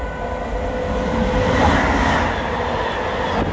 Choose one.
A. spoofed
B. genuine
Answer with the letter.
B